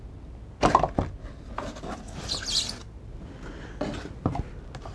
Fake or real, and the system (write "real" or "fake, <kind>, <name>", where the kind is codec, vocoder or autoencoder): real